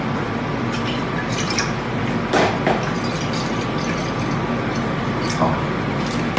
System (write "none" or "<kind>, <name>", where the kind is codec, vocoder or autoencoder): none